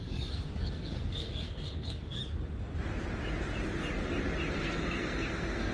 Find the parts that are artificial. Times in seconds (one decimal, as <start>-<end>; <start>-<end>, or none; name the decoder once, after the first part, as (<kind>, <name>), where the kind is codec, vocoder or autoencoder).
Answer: 0.0-2.2 (codec, SNAC); 4.5-5.7